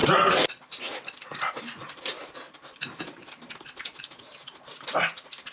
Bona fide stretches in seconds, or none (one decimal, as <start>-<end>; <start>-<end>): 0.0-5.5